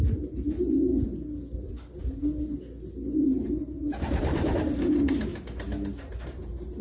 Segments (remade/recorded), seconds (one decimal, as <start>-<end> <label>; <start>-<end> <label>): 0.0-0.9 remade; 0.9-3.3 recorded; 3.3-5.3 remade; 5.3-6.1 recorded; 6.1-6.8 remade